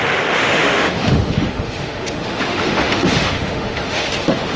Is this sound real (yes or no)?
no